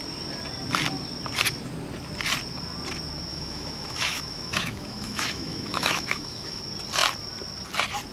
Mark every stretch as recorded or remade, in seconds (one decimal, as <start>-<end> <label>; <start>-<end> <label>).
0.0-3.3 recorded; 3.3-6.6 remade; 6.6-8.1 recorded